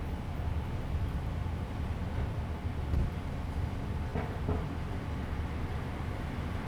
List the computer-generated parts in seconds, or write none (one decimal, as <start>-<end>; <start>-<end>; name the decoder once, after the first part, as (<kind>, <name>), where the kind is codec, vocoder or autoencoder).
none